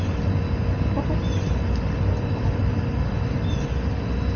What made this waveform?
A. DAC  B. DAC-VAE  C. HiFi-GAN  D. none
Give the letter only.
D